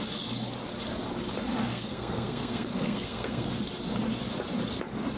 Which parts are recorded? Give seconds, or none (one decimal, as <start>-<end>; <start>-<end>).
0.0-1.7; 3.5-5.2